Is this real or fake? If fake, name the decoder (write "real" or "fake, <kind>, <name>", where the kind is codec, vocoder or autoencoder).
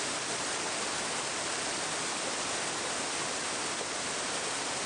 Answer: real